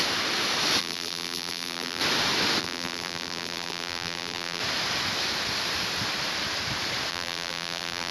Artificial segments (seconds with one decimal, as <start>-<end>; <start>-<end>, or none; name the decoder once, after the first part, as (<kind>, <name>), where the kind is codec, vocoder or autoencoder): 0.8-2.0 (vocoder, BigVGAN v2); 2.6-4.6; 7.1-8.1